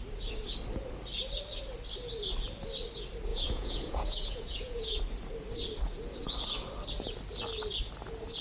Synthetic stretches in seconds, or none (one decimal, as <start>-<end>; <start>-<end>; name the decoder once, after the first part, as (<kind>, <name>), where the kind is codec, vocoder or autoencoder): 3.3-5.0 (vocoder, Vocos)